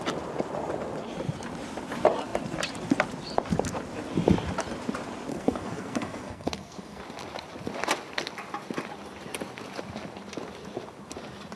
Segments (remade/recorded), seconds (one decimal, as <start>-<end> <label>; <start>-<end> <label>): 0.0-5.3 recorded; 5.3-7.0 remade; 7.0-11.6 recorded